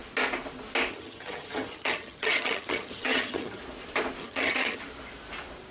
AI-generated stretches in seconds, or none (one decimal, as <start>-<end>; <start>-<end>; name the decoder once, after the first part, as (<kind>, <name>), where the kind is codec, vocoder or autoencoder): 0.9-3.6 (vocoder, HiFi-GAN); 4.2-4.8